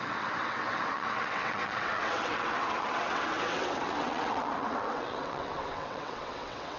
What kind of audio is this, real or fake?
fake